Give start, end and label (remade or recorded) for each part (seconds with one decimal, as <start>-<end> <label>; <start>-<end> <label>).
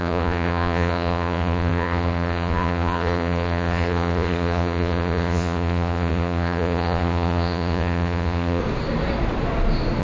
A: 0.0-8.6 remade; 8.6-10.0 recorded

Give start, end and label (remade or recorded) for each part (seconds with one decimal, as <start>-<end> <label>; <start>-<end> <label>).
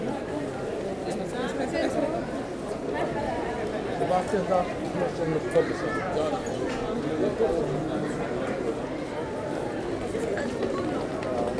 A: 0.0-11.6 recorded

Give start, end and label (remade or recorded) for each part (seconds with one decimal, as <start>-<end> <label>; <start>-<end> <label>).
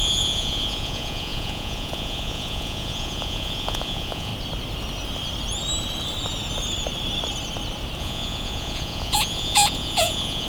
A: 0.0-4.3 remade; 4.3-8.0 recorded; 8.0-10.5 remade